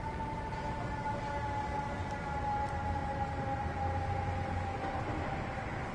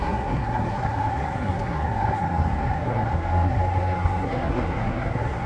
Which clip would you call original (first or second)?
first